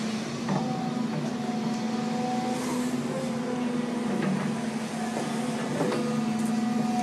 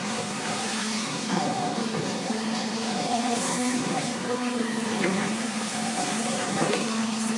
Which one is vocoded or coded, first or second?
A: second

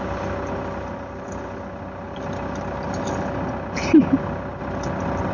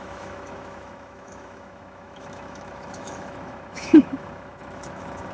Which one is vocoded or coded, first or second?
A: second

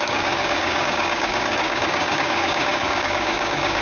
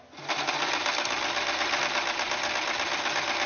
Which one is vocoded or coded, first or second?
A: first